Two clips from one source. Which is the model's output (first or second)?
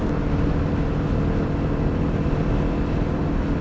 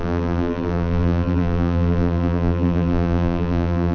second